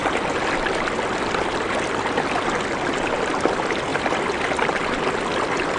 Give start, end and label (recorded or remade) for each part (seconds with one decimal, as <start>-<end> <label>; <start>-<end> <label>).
0.0-5.8 recorded